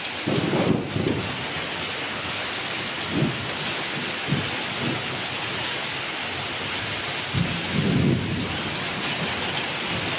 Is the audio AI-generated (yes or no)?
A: no